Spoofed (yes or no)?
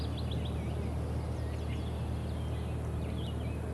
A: no